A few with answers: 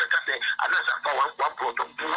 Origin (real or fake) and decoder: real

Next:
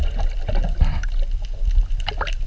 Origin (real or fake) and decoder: real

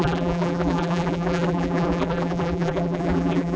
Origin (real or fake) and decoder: fake, vocoder, BigVGAN v2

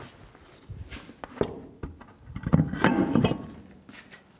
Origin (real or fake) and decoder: real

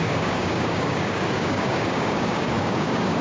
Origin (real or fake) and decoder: fake, codec, DAC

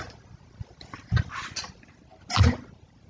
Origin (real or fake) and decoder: real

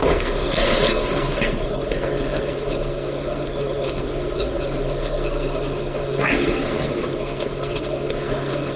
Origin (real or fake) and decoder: fake, codec, SNAC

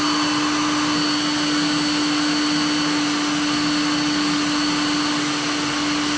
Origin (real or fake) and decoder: real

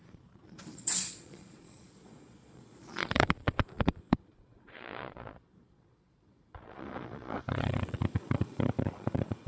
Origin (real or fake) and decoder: fake, vocoder, Vocos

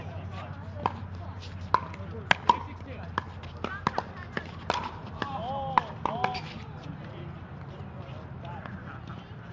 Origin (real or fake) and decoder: real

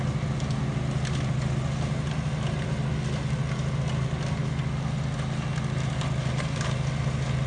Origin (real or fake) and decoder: real